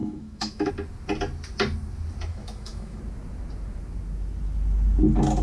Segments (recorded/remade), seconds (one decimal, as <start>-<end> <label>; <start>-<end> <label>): 0.0-0.7 remade; 0.7-2.3 recorded; 2.3-3.0 remade; 3.0-5.4 recorded